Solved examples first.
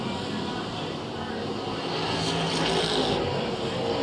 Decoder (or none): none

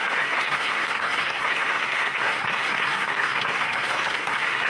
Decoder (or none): codec, SNAC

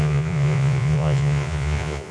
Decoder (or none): vocoder, Vocos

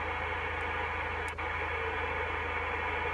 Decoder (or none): none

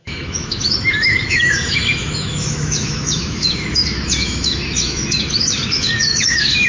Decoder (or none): autoencoder, DAC-VAE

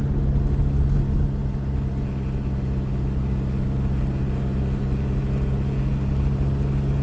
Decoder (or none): none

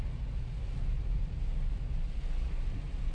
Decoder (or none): none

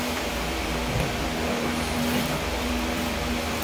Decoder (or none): vocoder, BigVGAN v2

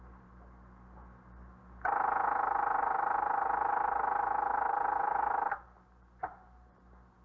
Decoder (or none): none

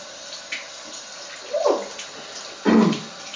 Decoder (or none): none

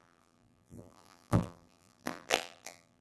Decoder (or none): vocoder, BigVGAN v2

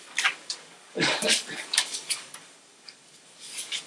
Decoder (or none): codec, DAC